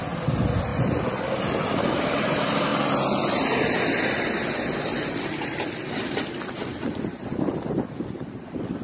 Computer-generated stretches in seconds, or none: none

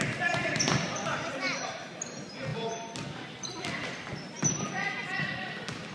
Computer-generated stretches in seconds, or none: none